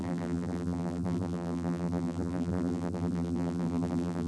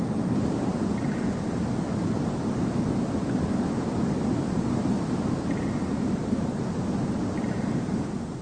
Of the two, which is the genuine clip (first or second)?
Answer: second